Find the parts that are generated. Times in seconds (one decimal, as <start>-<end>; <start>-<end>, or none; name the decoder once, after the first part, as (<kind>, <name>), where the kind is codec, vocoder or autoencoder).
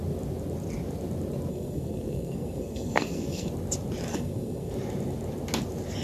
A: 1.5-3.5 (codec, SNAC); 4.1-4.7